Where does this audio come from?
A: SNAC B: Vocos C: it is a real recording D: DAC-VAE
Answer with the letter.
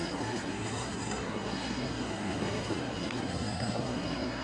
A